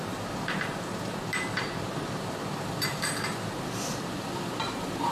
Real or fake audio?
fake